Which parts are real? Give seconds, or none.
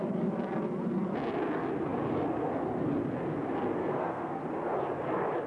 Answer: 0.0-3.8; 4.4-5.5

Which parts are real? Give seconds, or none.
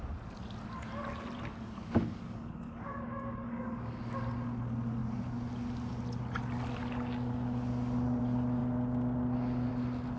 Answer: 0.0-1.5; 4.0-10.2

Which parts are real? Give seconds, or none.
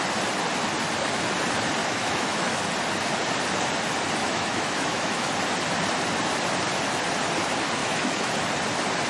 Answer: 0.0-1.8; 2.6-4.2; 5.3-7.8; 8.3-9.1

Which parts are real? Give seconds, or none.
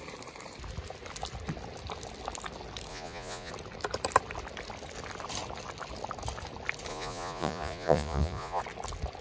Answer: 0.0-2.9; 3.5-6.9; 8.6-9.2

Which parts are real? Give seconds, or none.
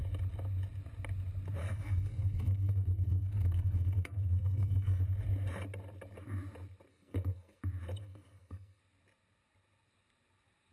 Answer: 0.0-1.6; 5.0-6.9; 7.6-8.0; 8.8-10.7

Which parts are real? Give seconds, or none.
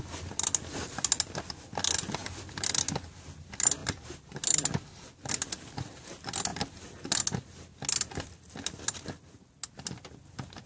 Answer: 0.0-10.7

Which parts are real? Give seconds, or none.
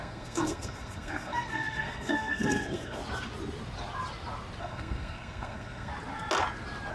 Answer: 3.0-4.6; 5.9-6.9